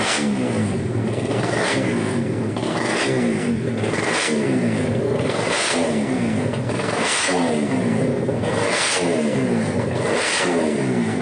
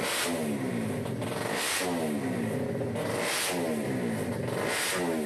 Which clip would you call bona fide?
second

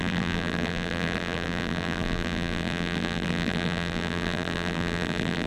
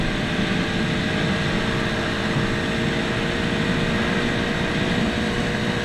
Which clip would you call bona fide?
second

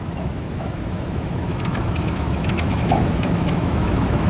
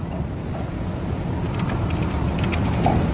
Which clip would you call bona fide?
second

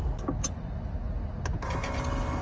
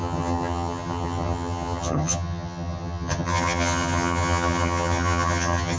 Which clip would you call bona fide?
first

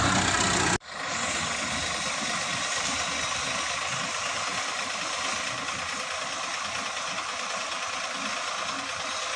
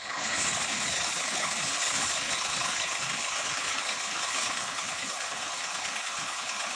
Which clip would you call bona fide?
first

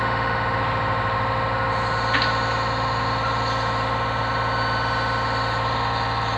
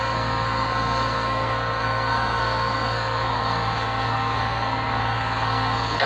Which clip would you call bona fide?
first